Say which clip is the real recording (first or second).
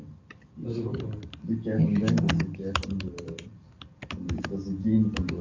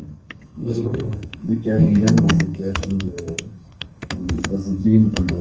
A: first